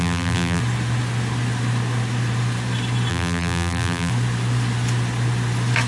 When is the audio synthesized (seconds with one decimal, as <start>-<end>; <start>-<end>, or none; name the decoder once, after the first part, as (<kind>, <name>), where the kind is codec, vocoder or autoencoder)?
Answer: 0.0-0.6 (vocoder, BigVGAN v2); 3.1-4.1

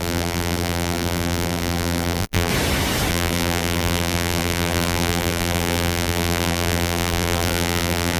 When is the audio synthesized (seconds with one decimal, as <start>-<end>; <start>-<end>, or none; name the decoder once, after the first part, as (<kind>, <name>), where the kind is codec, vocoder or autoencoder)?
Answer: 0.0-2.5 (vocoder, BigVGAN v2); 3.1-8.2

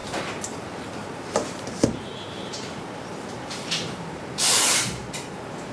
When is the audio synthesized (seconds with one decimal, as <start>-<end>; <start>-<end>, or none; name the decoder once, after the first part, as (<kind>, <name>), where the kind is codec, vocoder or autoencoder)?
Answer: 0.0-5.0 (vocoder, BigVGAN v2)

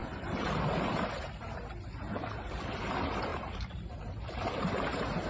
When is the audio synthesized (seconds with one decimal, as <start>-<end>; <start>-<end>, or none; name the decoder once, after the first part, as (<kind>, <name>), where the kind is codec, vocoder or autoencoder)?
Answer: 0.0-5.3 (vocoder, BigVGAN v2)

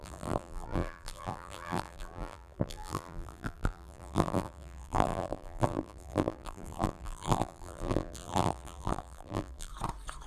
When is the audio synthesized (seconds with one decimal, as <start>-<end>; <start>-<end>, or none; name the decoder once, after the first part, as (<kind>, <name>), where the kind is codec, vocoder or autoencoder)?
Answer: 0.0-9.7 (vocoder, BigVGAN v2)

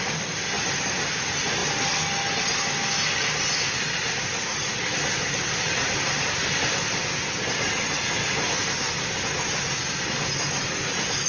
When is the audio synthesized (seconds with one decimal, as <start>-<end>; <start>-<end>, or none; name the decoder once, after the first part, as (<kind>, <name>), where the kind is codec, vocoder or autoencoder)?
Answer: none

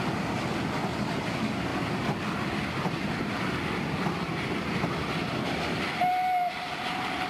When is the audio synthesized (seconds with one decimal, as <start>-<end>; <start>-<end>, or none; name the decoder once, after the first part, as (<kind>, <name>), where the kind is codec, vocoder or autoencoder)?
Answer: none

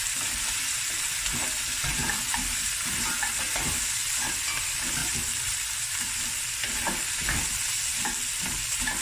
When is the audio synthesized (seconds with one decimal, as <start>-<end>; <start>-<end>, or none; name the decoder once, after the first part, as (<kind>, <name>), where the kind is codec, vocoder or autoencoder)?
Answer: 0.0-5.0 (vocoder, BigVGAN v2); 5.8-9.0